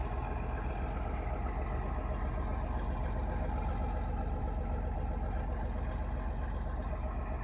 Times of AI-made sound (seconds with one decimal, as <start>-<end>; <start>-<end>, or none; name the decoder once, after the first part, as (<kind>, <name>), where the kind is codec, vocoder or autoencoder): none